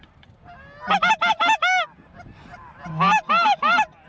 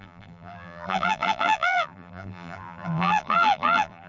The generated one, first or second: second